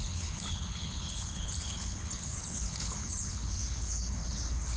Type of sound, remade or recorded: remade